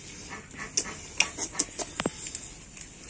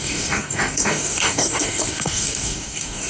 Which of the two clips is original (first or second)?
first